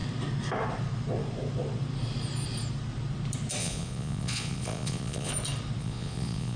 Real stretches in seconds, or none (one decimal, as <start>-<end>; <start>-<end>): 0.0-3.6; 5.3-5.8